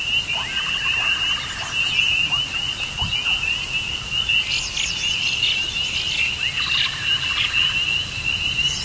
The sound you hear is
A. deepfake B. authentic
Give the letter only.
B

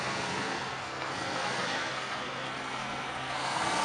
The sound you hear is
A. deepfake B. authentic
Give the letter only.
A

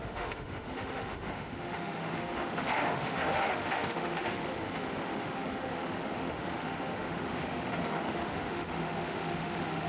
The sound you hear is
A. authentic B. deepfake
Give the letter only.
B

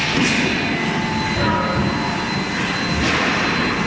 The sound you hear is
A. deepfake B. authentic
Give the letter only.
B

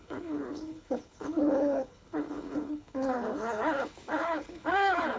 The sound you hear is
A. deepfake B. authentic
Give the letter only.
A